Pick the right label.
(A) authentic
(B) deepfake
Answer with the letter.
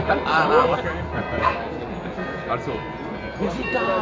A